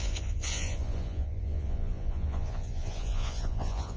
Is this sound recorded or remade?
remade